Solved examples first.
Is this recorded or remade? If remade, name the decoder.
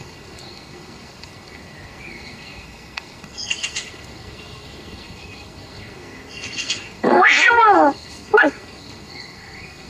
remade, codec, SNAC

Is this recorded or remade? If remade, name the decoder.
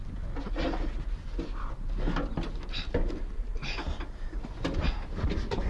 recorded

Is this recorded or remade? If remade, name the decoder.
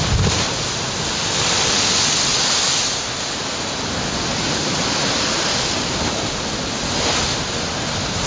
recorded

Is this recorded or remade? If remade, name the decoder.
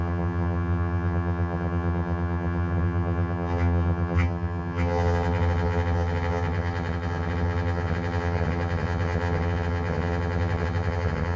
remade, vocoder, HiFi-GAN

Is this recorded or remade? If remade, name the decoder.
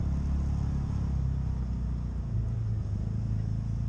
recorded